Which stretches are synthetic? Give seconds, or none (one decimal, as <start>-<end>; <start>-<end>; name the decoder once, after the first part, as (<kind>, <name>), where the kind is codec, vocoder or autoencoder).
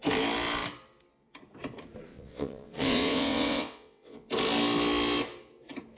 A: 2.1-4.3 (vocoder, WaveNeXt)